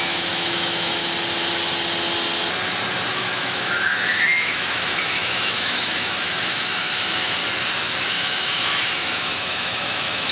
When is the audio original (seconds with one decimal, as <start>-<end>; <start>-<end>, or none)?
1.0-3.1; 7.4-8.0